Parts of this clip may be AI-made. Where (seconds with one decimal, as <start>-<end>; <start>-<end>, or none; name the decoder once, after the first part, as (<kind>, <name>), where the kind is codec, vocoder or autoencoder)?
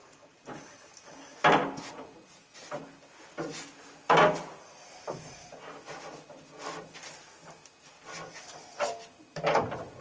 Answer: none